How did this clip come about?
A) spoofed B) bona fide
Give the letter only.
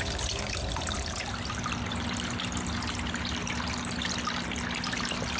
B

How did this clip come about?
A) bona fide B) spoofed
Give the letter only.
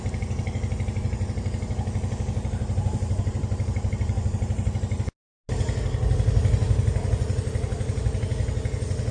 A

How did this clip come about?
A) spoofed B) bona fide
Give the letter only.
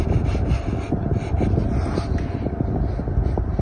B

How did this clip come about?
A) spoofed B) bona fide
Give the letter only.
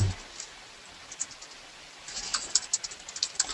B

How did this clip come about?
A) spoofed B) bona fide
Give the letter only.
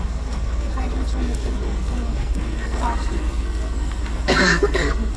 A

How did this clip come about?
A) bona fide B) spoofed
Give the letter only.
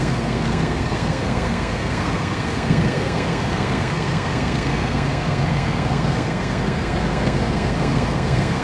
B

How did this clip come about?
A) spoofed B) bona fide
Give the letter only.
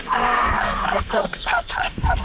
A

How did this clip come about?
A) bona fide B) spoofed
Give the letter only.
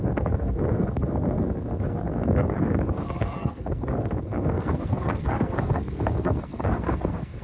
B